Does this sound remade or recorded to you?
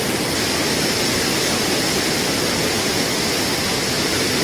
recorded